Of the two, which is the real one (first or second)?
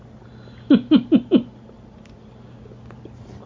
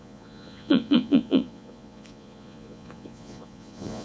first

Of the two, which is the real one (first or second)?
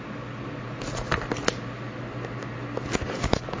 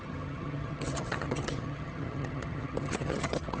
first